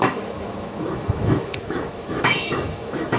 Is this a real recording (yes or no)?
no